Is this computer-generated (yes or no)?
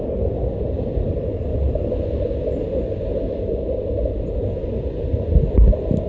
no